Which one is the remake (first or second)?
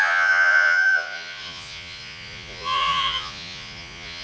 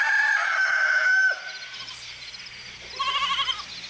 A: first